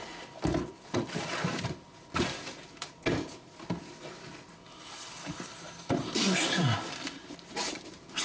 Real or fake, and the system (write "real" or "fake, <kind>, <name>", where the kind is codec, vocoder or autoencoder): real